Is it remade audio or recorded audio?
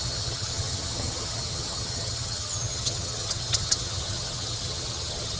remade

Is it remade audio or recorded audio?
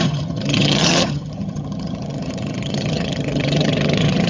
remade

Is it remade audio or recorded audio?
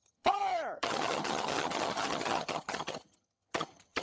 remade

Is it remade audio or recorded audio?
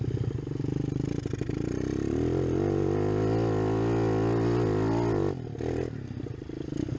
recorded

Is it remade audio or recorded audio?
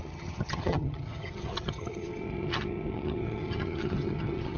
remade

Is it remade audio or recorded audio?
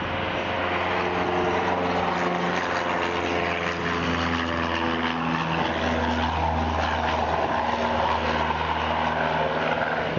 recorded